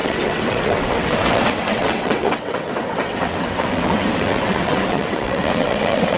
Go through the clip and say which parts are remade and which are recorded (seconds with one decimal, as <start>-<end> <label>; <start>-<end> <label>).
0.0-6.2 remade